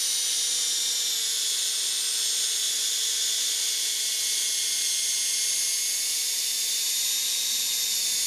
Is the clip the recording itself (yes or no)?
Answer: yes